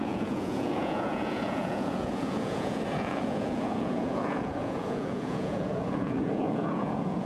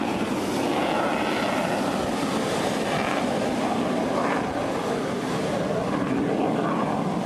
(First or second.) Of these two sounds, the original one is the second